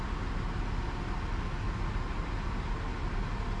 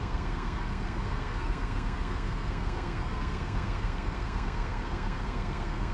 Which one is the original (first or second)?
first